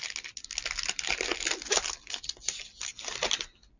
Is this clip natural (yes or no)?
yes